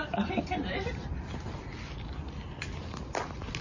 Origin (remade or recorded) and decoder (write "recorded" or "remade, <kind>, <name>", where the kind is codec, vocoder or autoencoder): recorded